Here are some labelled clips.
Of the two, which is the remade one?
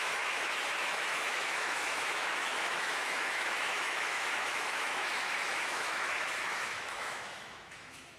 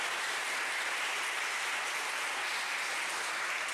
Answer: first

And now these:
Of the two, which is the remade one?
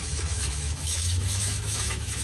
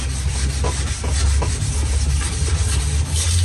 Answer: first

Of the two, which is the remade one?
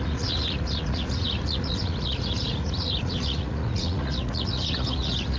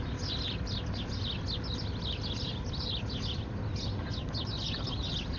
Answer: first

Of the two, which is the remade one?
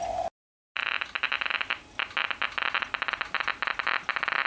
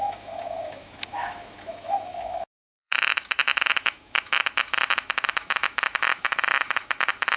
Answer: second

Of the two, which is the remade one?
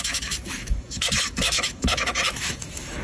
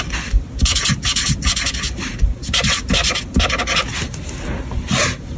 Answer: first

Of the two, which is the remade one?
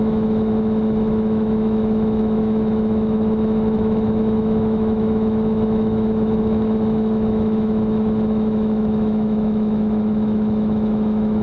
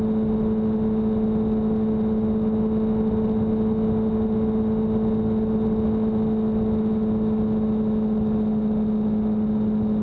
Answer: first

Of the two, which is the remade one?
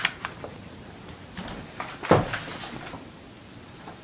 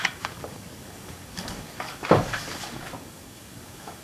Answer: second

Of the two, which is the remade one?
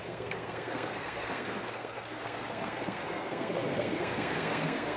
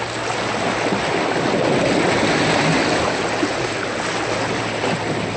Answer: first